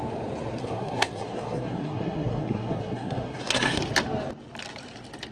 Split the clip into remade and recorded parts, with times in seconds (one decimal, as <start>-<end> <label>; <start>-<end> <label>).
0.0-0.6 recorded; 0.6-3.8 remade; 3.8-5.3 recorded